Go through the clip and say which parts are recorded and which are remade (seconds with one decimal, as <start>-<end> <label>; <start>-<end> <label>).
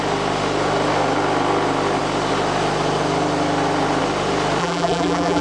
0.0-4.6 recorded; 4.6-5.4 remade